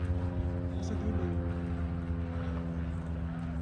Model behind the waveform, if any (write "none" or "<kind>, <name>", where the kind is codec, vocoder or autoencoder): none